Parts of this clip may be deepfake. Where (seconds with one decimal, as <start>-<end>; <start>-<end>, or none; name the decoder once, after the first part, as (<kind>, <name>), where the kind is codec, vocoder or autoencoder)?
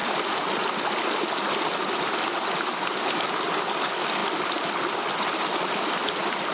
4.2-4.7 (vocoder, BigVGAN v2)